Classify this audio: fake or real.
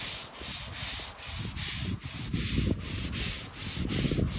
real